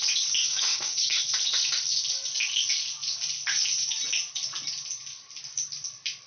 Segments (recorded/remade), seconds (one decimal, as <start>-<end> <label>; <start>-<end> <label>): 0.0-0.4 recorded; 0.4-1.2 remade; 1.2-6.3 recorded